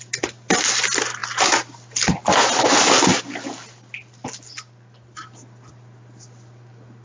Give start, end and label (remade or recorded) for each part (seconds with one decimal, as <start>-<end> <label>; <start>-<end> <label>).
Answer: 0.0-7.0 recorded